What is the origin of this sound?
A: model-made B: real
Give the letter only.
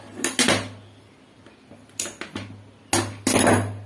B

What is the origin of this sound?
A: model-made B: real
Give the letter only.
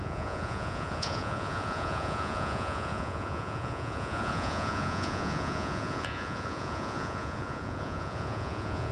A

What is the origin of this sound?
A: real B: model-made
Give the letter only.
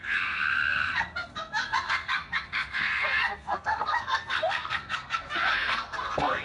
B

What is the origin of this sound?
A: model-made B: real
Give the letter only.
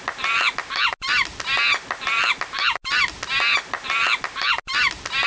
B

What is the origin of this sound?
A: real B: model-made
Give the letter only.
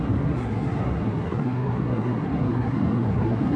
B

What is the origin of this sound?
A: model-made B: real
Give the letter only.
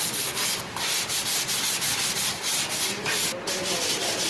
A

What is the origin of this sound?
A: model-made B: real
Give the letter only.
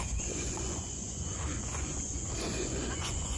A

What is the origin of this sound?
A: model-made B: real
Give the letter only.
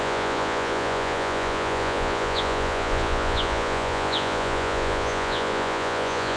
A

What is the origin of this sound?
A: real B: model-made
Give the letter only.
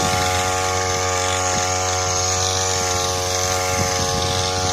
A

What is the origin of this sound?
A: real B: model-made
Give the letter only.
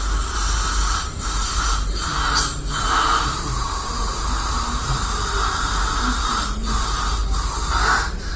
B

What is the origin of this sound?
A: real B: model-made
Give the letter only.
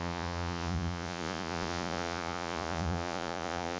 B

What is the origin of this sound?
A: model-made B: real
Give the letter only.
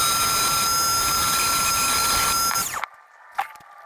B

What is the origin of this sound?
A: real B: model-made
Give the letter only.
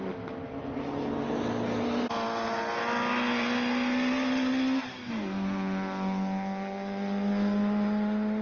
A